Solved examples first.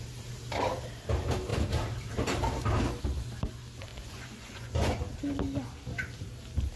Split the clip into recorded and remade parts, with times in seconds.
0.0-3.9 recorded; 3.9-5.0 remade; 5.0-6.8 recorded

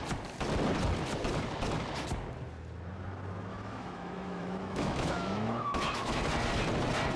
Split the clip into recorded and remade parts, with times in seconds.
0.0-3.5 recorded; 3.5-6.2 remade; 6.2-7.2 recorded

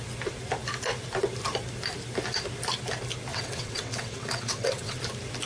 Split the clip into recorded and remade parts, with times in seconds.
0.0-3.3 recorded; 3.3-5.0 remade; 5.0-5.5 recorded

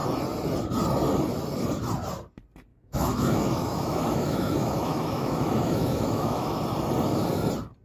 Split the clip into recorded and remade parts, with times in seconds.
0.0-2.7 recorded; 2.7-6.6 remade; 6.6-7.8 recorded

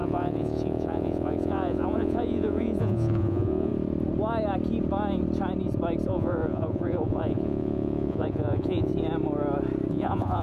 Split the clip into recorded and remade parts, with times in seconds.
0.0-3.7 remade; 3.7-6.1 recorded; 6.1-8.9 remade; 8.9-9.9 recorded; 9.9-10.4 remade

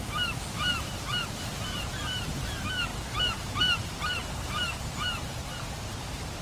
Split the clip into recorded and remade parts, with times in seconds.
0.0-0.7 remade; 0.7-1.4 recorded; 1.4-6.4 remade

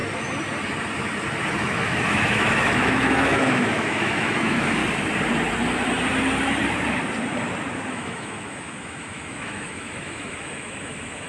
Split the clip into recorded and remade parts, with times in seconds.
0.0-1.6 recorded; 1.6-4.8 remade; 4.8-7.9 recorded; 7.9-11.3 remade

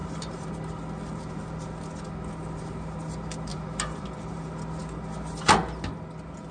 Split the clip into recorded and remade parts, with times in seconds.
0.0-0.5 remade; 0.5-3.5 recorded; 3.5-4.4 remade; 4.4-6.5 recorded